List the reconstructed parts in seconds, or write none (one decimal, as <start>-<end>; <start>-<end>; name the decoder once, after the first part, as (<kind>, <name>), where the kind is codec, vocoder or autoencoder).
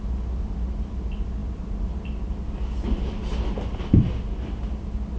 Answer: none